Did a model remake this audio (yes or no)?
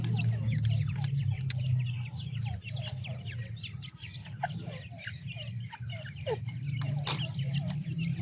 no